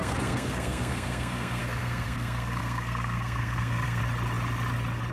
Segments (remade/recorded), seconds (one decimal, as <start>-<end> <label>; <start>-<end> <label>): 0.0-4.0 remade; 4.0-5.1 recorded